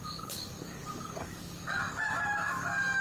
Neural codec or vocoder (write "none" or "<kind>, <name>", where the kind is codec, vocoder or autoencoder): codec, DAC